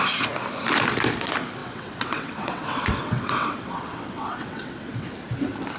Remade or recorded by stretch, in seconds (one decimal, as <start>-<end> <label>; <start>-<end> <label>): 0.0-1.6 recorded; 1.6-5.1 remade; 5.1-5.8 recorded